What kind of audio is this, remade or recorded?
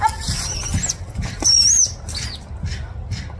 recorded